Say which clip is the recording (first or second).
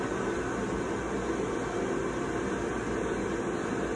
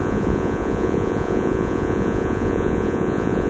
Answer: first